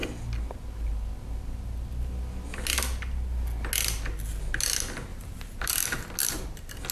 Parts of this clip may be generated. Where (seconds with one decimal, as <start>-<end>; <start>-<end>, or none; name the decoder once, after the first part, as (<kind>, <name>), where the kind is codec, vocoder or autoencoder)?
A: 5.1-5.7 (vocoder, BigVGAN v2)